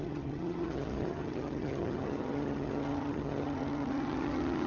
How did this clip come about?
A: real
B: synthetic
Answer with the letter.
B